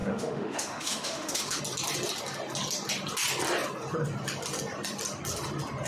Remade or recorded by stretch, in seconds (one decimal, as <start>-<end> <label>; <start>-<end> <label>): 0.0-1.6 remade; 1.6-5.9 recorded